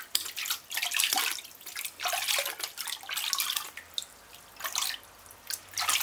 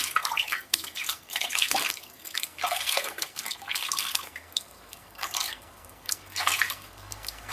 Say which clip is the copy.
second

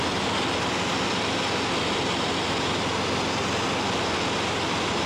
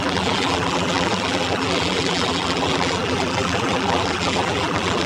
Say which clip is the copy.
second